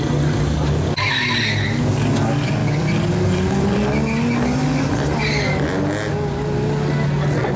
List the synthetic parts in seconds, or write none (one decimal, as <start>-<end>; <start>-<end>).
none